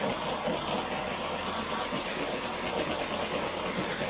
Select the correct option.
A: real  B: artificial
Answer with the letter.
A